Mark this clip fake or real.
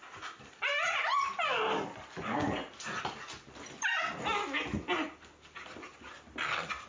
real